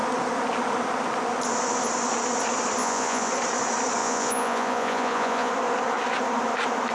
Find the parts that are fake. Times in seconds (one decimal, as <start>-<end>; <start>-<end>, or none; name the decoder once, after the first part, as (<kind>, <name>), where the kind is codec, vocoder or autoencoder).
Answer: 2.8-3.3 (vocoder, Vocos); 4.0-5.5